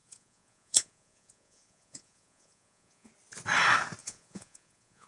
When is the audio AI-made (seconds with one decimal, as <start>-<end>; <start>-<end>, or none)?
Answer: 0.0-3.1; 4.0-5.1